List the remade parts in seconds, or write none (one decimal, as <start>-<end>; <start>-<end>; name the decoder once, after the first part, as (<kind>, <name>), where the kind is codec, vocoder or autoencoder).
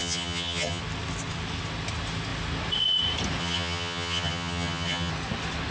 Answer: 0.0-0.8 (vocoder, HiFi-GAN); 3.4-5.1